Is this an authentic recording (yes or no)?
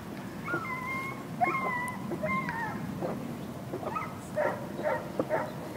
yes